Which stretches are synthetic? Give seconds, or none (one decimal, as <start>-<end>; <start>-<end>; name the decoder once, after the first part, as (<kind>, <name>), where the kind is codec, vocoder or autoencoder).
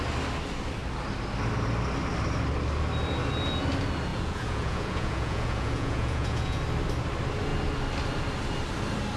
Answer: 4.1-6.6 (vocoder, Vocos)